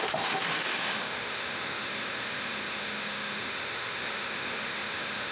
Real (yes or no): no